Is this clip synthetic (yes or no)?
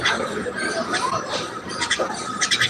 yes